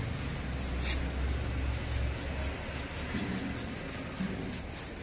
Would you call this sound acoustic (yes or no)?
yes